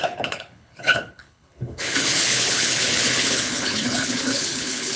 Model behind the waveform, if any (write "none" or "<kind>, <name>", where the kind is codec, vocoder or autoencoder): codec, HILCodec